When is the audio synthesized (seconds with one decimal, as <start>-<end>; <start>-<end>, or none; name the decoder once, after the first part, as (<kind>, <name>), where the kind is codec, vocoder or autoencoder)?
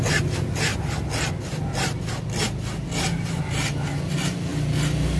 none